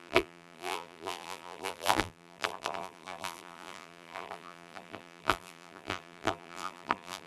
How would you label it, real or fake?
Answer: fake